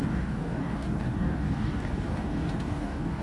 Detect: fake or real fake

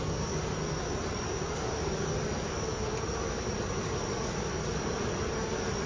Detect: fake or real real